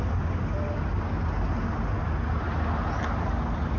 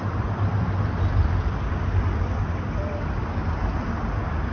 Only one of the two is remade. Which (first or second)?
second